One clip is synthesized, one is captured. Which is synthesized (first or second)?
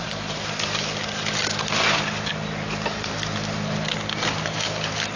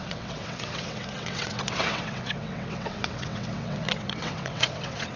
second